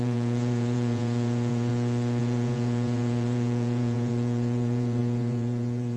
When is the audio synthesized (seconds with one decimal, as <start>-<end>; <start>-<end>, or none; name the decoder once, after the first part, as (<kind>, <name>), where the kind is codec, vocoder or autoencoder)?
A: 0.0-1.7 (vocoder, Vocos); 2.2-6.0

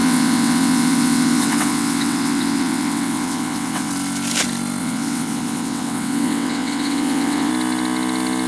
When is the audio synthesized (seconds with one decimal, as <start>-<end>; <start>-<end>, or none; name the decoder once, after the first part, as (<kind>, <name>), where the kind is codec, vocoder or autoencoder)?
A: 0.0-3.9 (vocoder, WaveNeXt); 4.8-7.5

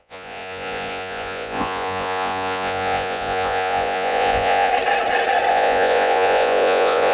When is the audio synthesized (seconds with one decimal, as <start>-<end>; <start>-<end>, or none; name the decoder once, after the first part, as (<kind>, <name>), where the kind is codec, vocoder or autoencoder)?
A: 0.0-4.7 (vocoder, Vocos); 5.5-7.1

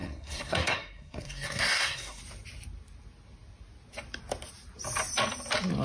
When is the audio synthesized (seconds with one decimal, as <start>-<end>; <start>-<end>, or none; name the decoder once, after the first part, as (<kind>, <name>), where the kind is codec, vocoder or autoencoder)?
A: 0.0-2.2 (codec, SNAC)